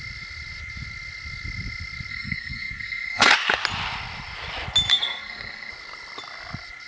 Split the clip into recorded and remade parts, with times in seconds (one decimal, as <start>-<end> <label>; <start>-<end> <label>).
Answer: 0.0-2.1 recorded; 2.1-3.3 remade; 3.3-4.9 recorded; 4.9-5.7 remade; 5.7-6.9 recorded